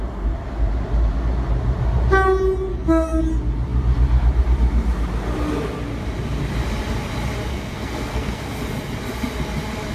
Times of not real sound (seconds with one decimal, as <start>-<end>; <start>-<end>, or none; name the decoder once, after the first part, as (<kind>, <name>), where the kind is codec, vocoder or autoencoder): 2.7-3.2 (codec, SNAC); 7.5-8.6